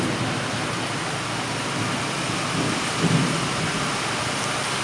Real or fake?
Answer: real